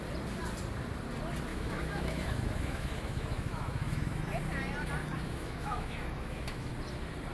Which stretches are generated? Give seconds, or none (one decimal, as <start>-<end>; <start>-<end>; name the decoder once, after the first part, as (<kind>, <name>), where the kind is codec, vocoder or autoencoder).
1.5-4.4 (autoencoder, DAC-VAE); 5.0-6.7